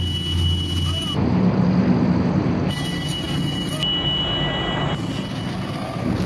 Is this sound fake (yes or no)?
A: no